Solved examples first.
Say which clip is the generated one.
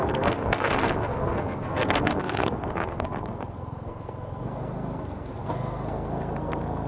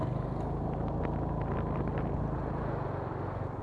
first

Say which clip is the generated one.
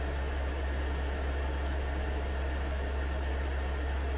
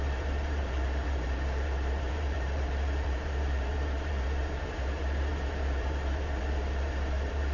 second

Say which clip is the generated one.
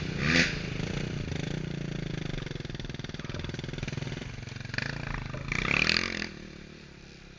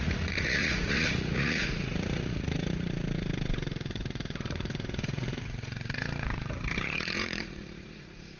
second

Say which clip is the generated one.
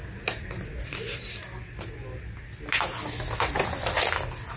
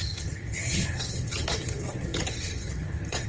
second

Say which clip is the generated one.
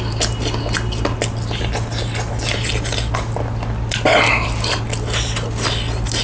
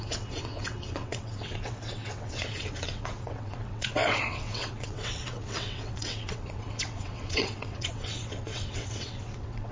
second